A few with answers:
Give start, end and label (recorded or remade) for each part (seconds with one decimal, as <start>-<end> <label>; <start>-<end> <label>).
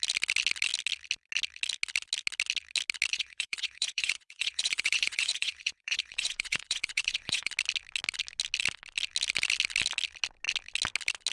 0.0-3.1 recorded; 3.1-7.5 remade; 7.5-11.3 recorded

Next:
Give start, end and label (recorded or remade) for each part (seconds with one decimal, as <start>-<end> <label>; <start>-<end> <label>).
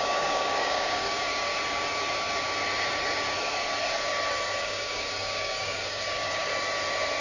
0.0-1.5 remade; 1.5-4.6 recorded; 4.6-6.5 remade; 6.5-7.2 recorded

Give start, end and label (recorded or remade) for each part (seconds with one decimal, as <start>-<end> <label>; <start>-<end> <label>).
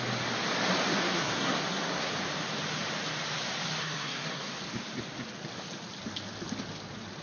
0.0-1.0 recorded; 1.0-2.1 remade; 2.1-3.8 recorded; 3.8-4.6 remade; 4.6-7.2 recorded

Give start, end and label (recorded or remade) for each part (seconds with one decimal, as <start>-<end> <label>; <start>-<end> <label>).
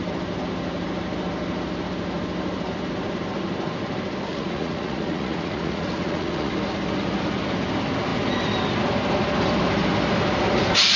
0.0-4.3 recorded; 4.3-6.5 remade; 6.5-11.0 recorded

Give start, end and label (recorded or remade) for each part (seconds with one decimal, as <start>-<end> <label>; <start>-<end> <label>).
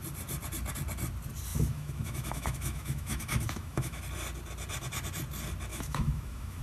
0.0-1.5 recorded; 1.5-4.0 remade; 4.0-5.7 recorded; 5.7-6.6 remade